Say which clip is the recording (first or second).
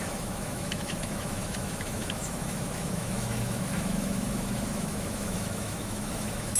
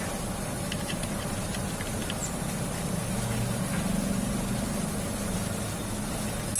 second